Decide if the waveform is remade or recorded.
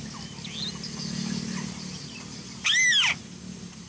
recorded